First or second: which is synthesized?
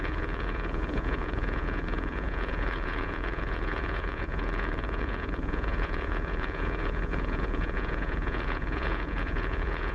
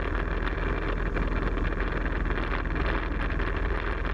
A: first